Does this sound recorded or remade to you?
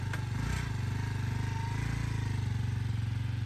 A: recorded